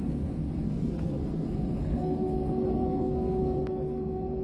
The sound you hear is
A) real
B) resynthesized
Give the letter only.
B